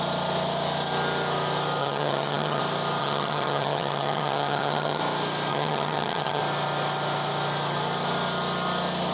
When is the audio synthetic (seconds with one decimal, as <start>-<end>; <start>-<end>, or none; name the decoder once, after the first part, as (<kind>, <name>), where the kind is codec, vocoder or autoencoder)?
1.8-2.6 (vocoder, HiFi-GAN); 3.0-5.0; 5.5-6.4